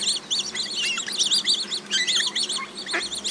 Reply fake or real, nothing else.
real